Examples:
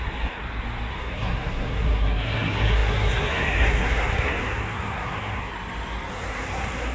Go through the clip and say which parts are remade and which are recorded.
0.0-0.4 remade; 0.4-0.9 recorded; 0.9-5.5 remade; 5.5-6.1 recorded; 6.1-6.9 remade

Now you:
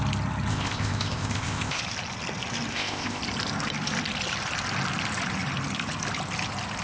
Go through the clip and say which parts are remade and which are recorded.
0.0-0.5 recorded; 0.5-1.8 remade; 1.8-2.7 recorded; 2.7-3.2 remade; 3.2-6.8 recorded

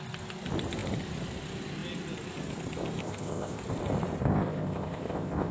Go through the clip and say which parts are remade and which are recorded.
0.0-3.0 recorded; 3.0-3.6 remade; 3.6-4.2 recorded; 4.2-5.5 remade

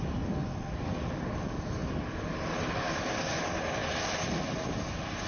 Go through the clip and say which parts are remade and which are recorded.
0.0-5.3 recorded